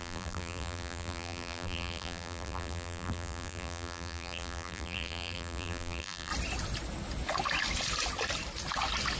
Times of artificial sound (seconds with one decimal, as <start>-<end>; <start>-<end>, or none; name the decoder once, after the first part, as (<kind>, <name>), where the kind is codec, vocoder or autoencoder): 0.0-6.3 (vocoder, BigVGAN v2)